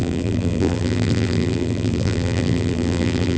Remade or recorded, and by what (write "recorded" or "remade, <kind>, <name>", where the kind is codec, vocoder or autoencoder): remade, vocoder, BigVGAN v2